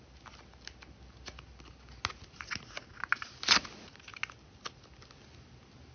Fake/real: real